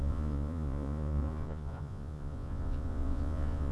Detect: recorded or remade remade